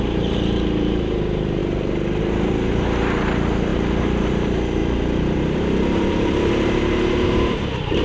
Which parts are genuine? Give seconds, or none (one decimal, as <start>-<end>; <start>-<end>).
1.6-2.2; 4.8-5.4